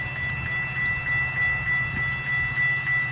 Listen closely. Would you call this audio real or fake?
real